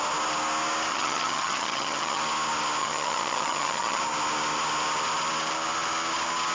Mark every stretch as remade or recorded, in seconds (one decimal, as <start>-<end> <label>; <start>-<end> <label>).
0.0-0.9 recorded; 0.9-2.2 remade; 2.2-2.8 recorded; 2.8-4.0 remade; 4.0-6.5 recorded